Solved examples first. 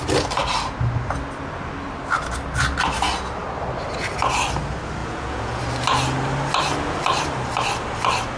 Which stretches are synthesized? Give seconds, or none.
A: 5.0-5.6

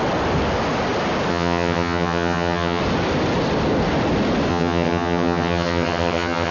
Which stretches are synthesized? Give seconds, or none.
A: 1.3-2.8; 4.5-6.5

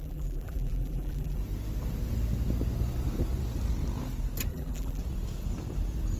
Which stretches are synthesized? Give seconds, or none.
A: 0.0-1.4; 4.5-5.0

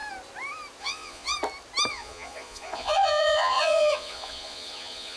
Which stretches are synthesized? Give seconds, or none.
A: 0.8-1.3; 1.9-5.2

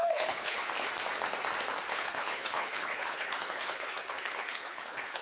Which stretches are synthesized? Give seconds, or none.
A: 0.0-0.6; 1.9-5.2

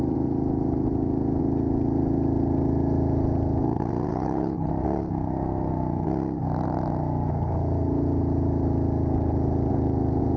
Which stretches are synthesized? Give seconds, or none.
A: 4.1-4.7

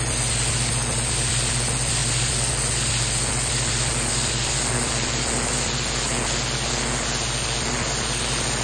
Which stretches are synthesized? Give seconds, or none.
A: none